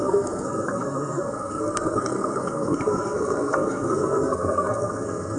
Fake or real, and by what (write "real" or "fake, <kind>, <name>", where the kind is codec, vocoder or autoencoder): fake, codec, SNAC